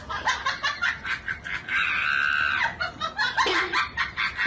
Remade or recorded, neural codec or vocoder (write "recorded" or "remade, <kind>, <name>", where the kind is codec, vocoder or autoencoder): recorded